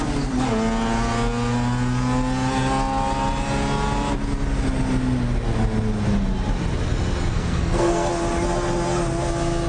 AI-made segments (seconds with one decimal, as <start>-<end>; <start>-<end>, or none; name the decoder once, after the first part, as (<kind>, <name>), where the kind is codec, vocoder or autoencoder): 7.3-8.1 (codec, SNAC)